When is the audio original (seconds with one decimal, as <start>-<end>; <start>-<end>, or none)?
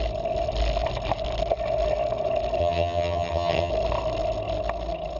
0.0-2.6; 3.7-5.2